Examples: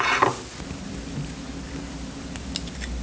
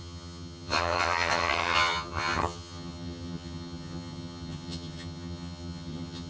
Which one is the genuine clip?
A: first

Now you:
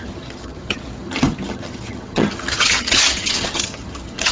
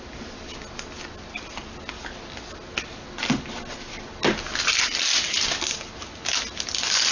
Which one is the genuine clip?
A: second